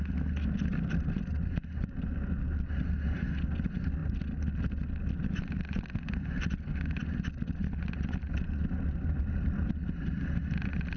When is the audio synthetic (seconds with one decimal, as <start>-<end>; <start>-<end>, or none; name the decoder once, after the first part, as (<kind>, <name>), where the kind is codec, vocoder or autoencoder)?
none